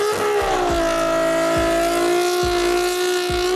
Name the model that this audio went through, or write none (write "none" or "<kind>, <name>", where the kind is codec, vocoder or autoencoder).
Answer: none